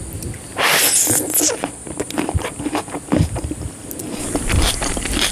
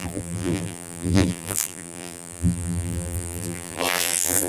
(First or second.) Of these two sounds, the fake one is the second